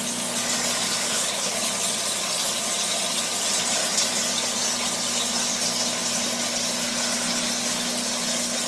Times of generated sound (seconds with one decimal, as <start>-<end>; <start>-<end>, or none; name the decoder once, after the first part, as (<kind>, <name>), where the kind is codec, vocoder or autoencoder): 1.0-1.7 (codec, HILCodec)

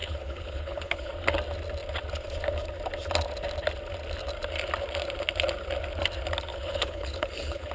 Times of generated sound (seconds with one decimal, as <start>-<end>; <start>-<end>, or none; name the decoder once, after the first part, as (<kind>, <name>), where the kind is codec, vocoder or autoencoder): 0.0-1.1 (codec, HILCodec); 6.5-7.7

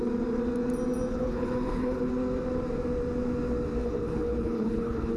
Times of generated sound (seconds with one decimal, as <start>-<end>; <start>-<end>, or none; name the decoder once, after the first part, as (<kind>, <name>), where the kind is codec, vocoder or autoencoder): 1.1-2.1 (codec, HILCodec); 3.8-5.2